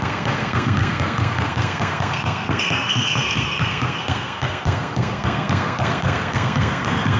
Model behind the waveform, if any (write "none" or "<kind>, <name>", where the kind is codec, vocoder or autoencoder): codec, SNAC